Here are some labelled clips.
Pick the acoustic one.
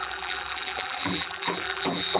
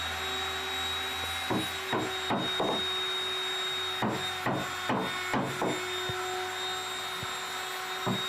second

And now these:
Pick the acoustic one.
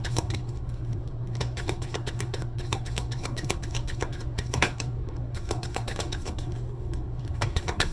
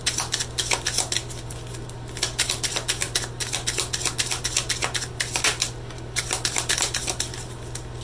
second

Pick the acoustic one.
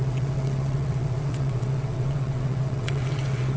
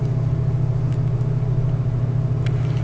second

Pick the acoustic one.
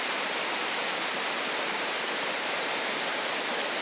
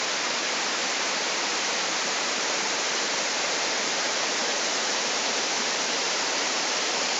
first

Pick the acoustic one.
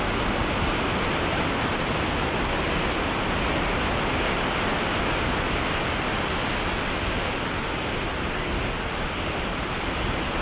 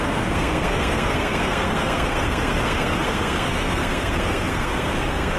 first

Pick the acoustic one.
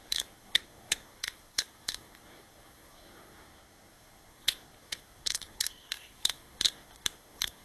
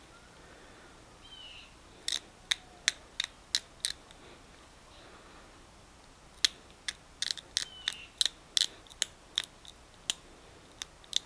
second